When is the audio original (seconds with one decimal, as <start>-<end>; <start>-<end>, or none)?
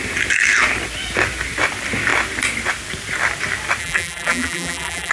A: 0.0-3.8